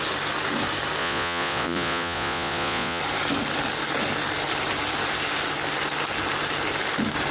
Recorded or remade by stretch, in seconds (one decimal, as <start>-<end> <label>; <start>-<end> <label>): 0.0-1.0 recorded; 1.0-3.0 remade; 3.0-7.3 recorded